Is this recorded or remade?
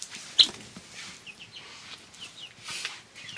recorded